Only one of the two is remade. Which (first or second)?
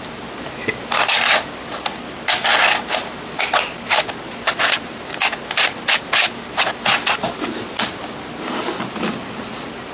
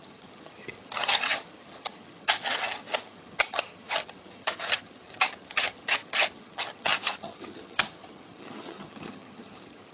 second